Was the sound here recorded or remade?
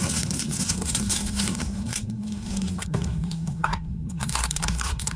remade